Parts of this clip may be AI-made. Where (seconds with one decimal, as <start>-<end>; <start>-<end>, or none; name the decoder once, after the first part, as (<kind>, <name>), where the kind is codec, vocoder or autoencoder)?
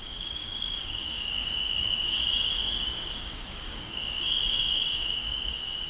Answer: 0.0-5.9 (codec, DAC)